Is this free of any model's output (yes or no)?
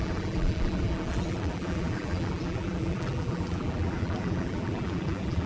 no